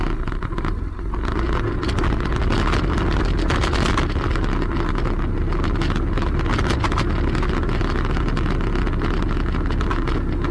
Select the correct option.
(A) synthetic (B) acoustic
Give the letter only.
B